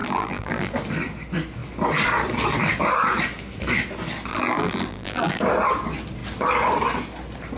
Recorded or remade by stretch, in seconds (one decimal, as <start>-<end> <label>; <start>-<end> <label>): 0.0-0.7 remade; 0.7-4.3 recorded; 4.3-5.4 remade; 5.4-7.6 recorded